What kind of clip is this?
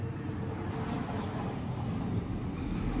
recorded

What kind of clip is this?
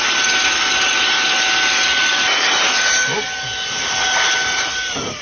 recorded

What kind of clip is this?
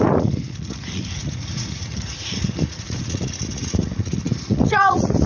remade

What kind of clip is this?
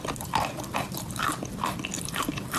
recorded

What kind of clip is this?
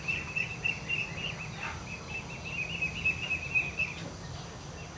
recorded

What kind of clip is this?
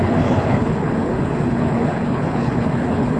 remade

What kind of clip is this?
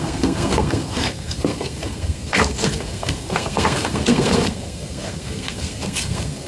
remade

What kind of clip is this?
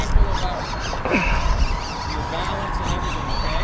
recorded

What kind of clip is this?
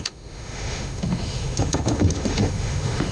remade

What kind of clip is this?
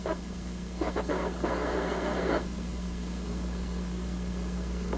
remade